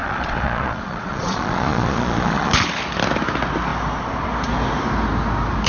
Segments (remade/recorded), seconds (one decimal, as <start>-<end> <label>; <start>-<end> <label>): 0.0-2.5 remade; 2.5-5.7 recorded

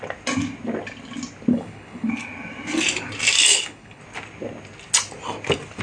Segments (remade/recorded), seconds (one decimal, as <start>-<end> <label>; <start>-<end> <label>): 0.0-1.5 recorded; 1.5-2.1 remade; 2.1-3.5 recorded; 3.5-4.0 remade; 4.0-5.8 recorded

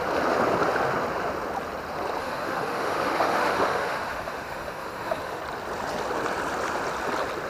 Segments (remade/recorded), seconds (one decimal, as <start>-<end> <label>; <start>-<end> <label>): 0.0-2.2 recorded; 2.2-5.4 remade; 5.4-7.5 recorded

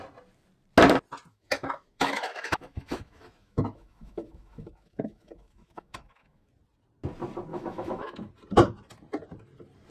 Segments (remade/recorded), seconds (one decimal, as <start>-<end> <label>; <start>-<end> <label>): 0.0-1.3 recorded; 1.3-6.5 remade; 6.5-7.5 recorded; 7.5-8.3 remade; 8.3-9.9 recorded

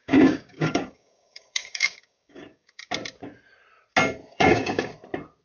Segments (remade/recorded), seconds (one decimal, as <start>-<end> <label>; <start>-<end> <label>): 0.0-2.9 remade; 2.9-4.3 recorded; 4.3-4.9 remade; 4.9-5.4 recorded

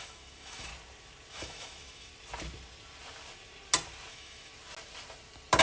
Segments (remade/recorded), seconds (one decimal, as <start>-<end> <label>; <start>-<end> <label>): 0.0-0.7 remade; 0.7-1.3 recorded; 1.3-2.1 remade; 2.1-4.1 recorded; 4.1-4.5 remade; 4.5-5.6 recorded